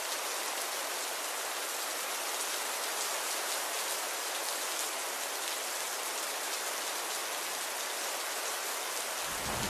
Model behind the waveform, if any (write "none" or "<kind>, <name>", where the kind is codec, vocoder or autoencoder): none